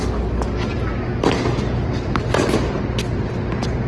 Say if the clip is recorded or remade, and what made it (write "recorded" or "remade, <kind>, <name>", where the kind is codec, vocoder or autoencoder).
recorded